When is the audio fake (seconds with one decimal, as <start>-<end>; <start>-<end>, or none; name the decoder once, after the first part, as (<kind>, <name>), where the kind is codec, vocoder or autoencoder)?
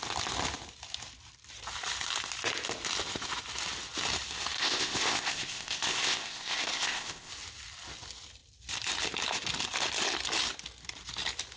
4.6-7.3 (codec, ZipCodec)